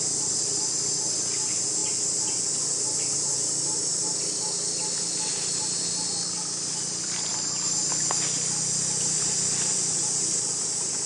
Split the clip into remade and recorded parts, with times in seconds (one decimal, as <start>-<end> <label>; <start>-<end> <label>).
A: 0.0-5.3 recorded; 5.3-5.8 remade; 5.8-11.1 recorded